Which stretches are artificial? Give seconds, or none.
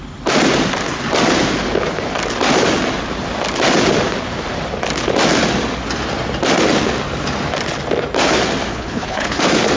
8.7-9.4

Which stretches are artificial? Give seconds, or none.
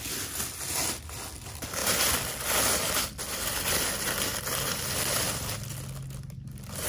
4.3-5.7